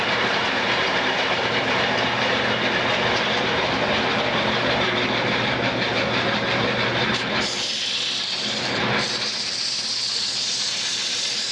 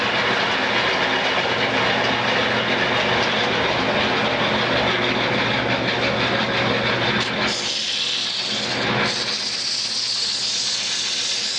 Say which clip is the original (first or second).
second